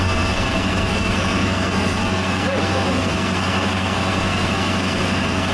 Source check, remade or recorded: remade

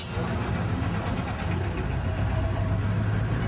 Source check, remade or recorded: recorded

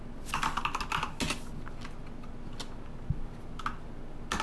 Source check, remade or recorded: recorded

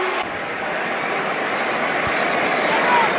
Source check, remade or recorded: recorded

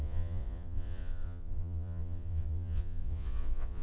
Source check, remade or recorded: remade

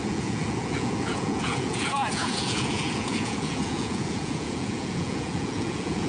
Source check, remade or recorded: remade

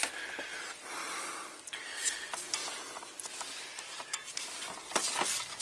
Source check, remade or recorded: recorded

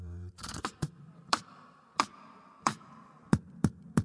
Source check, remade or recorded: remade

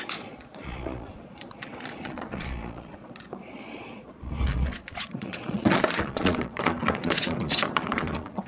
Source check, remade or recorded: remade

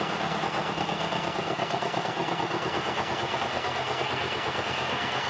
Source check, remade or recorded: remade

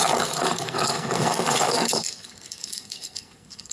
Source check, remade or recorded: remade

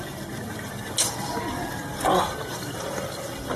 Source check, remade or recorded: recorded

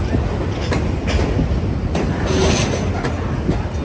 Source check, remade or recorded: recorded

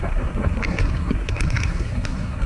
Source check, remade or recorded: remade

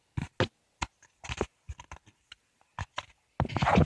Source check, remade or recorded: recorded